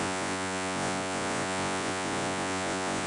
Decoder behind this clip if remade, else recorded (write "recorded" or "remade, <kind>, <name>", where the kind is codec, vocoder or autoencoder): remade, vocoder, Vocos